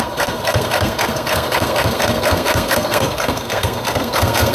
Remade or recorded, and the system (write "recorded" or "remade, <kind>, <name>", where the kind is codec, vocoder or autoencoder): remade, codec, SNAC